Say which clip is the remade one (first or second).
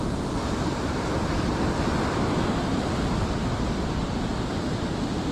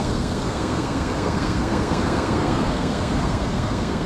second